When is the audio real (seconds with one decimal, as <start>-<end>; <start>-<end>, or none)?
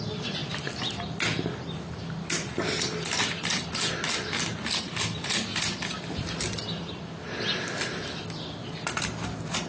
0.0-9.7